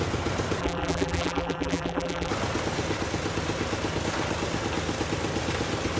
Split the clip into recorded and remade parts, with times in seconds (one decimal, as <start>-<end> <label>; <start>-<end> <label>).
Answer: 0.0-0.6 recorded; 0.6-2.3 remade; 2.3-6.0 recorded